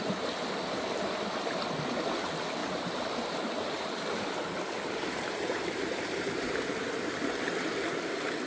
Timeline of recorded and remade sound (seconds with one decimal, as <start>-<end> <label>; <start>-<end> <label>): 0.0-2.6 recorded; 2.6-7.4 remade; 7.4-8.5 recorded